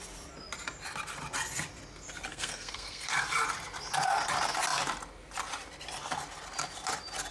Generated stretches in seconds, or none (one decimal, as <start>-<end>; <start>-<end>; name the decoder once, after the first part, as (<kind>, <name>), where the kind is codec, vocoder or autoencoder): 2.3-3.2 (codec, SNAC)

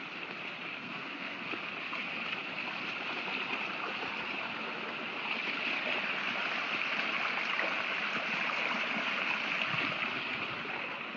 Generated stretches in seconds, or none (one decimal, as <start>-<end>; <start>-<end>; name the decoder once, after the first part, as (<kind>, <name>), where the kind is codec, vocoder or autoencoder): 0.8-1.6 (codec, SNAC)

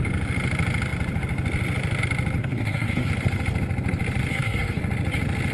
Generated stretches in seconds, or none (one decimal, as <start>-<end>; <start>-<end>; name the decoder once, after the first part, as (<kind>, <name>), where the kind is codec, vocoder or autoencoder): 2.4-3.1 (codec, SNAC); 4.3-4.8

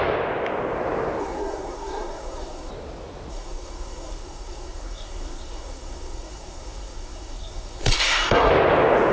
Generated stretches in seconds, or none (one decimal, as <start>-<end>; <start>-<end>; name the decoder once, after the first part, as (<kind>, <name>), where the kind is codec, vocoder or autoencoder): 1.2-2.7 (codec, SNAC); 3.3-8.5

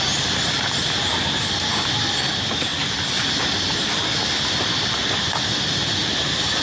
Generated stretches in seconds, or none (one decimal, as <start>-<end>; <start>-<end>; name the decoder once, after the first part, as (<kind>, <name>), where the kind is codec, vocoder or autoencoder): none

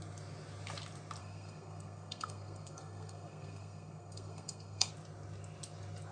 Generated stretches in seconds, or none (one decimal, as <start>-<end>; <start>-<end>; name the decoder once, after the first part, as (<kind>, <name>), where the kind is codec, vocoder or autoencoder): 1.2-4.9 (codec, SNAC)

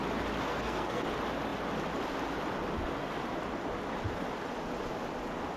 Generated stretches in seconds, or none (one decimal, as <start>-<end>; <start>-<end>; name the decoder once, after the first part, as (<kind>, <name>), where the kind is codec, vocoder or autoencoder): 0.5-1.0 (codec, SNAC)

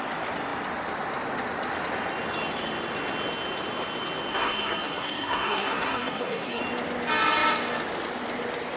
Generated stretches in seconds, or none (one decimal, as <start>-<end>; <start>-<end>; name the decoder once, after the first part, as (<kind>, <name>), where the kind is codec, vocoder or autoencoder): 4.3-6.6 (codec, SNAC)